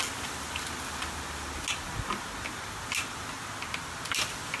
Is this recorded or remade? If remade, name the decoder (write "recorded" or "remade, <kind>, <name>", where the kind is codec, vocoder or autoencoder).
recorded